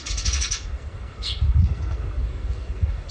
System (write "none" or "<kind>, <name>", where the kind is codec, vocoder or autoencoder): codec, SNAC